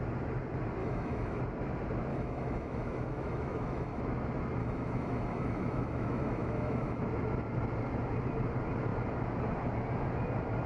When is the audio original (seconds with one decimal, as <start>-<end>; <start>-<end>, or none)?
0.0-0.8; 1.4-2.1; 4.0-4.6; 7.0-10.7